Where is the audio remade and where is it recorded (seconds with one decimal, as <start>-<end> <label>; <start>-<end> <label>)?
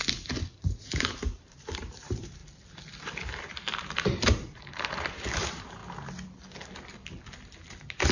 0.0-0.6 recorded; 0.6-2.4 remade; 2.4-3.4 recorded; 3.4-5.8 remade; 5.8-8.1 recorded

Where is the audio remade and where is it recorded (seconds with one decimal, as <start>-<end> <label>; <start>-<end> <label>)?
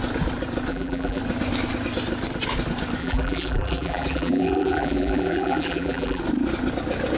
0.0-0.7 recorded; 0.7-1.2 remade; 1.2-3.0 recorded; 3.0-6.2 remade; 6.2-7.2 recorded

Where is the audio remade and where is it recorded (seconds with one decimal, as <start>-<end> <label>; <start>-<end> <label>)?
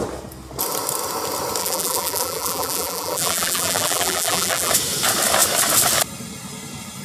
0.0-1.6 recorded; 1.6-4.7 remade; 4.7-7.0 recorded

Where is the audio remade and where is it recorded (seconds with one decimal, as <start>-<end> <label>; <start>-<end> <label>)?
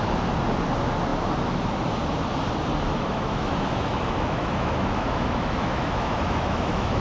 0.0-2.9 recorded; 2.9-7.0 remade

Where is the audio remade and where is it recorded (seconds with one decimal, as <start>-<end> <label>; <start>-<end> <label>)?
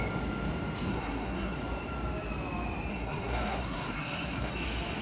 0.0-0.9 recorded; 0.9-1.6 remade; 1.6-2.9 recorded; 2.9-4.5 remade; 4.5-5.0 recorded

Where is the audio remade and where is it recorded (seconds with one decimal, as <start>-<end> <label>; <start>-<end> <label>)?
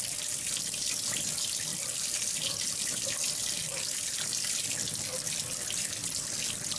0.0-6.8 recorded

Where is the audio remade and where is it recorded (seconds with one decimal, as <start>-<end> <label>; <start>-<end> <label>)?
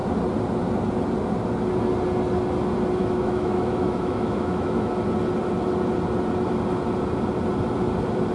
0.0-3.0 recorded; 3.0-4.9 remade; 4.9-8.3 recorded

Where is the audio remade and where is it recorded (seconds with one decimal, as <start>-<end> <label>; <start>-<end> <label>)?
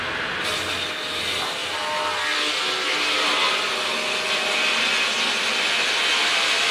0.0-6.7 recorded